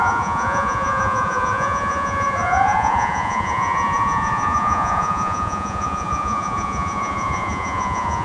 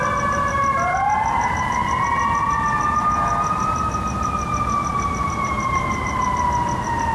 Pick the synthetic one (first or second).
first